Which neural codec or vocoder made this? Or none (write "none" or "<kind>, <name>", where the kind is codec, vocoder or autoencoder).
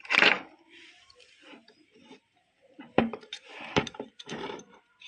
vocoder, BigVGAN v2